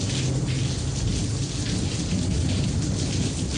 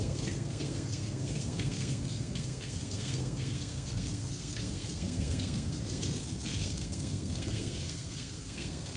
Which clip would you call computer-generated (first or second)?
second